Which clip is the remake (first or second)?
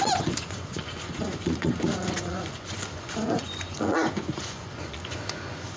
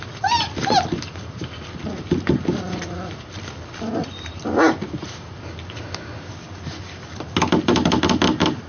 first